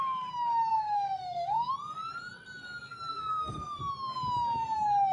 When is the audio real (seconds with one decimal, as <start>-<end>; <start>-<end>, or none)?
0.0-0.7; 1.7-3.1; 3.8-5.1